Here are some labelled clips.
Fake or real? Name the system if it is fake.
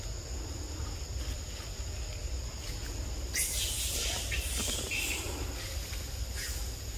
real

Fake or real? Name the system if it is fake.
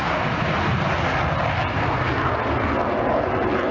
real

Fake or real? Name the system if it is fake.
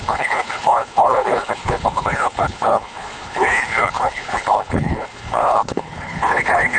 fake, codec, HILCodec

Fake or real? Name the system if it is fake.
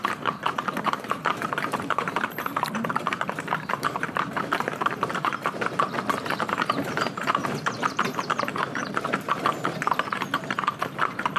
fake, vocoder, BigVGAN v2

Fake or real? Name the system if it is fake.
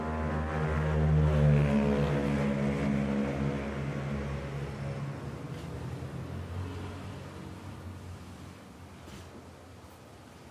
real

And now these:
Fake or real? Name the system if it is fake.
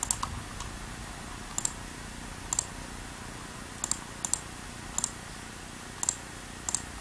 real